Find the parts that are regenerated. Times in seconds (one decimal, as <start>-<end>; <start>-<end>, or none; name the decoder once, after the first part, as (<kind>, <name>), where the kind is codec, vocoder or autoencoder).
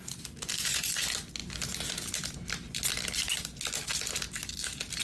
none